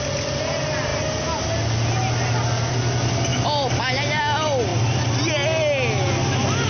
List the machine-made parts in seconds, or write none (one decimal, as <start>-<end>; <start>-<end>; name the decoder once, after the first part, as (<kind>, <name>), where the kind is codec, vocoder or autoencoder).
3.3-4.2 (vocoder, BigVGAN v2)